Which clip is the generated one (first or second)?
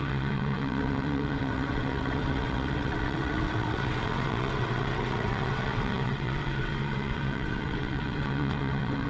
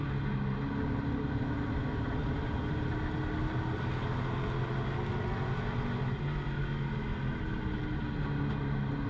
first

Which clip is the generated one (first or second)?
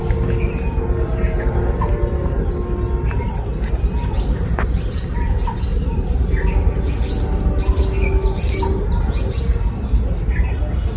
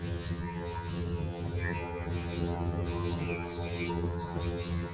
second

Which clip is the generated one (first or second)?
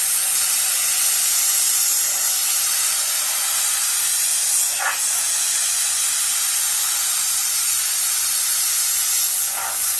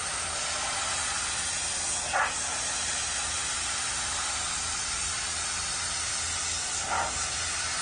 first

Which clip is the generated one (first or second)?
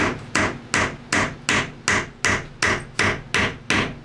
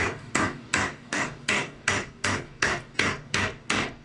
second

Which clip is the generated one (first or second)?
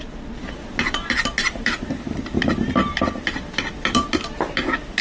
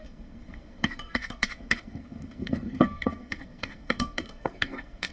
second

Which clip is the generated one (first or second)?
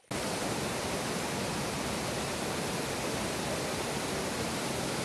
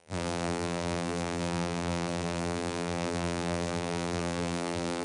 second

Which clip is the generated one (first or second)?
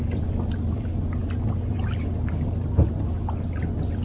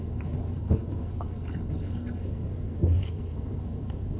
second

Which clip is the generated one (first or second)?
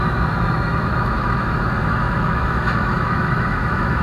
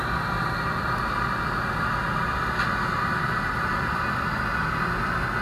first